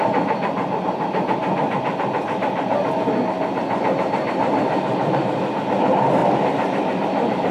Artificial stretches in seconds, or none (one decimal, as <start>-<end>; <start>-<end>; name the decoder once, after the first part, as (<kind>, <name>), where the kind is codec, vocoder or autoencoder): 6.2-7.5 (vocoder, BigVGAN v2)